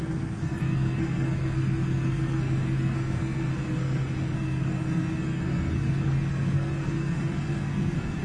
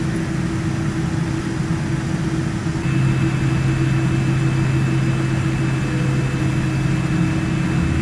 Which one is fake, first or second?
first